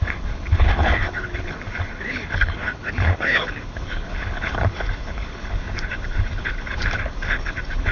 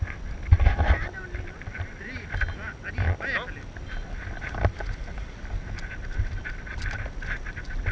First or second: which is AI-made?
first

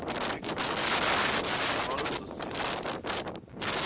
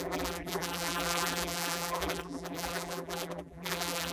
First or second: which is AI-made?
second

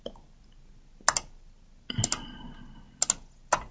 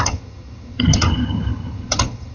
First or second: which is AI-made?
second